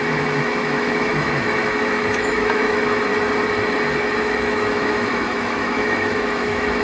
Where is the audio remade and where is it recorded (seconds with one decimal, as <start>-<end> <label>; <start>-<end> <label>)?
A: 0.0-3.1 remade; 3.1-4.2 recorded; 4.2-6.8 remade